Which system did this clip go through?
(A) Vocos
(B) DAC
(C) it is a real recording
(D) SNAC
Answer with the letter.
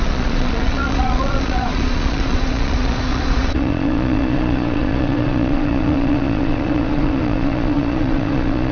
A